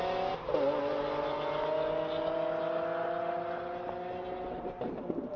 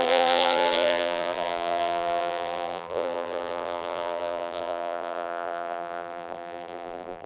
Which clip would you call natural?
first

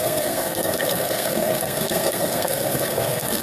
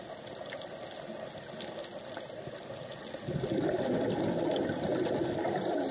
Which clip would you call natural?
second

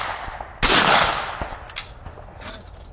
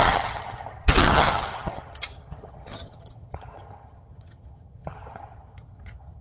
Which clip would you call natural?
first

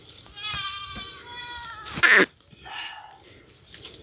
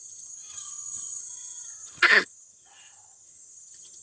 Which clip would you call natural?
first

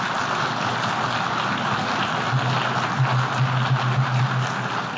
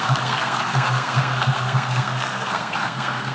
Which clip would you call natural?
first